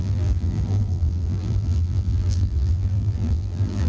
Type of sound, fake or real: fake